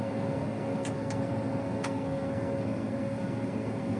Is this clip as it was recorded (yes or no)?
no